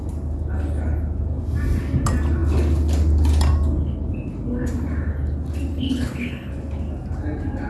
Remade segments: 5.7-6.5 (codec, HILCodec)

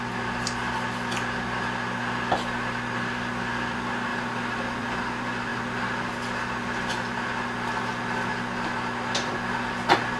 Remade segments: 4.1-5.0 (vocoder, BigVGAN v2)